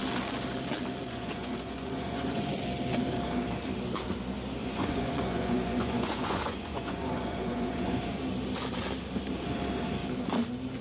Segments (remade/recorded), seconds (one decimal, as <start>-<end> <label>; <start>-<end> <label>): 0.0-1.0 recorded; 1.0-2.5 remade; 2.5-4.6 recorded; 4.6-8.2 remade; 8.2-10.8 recorded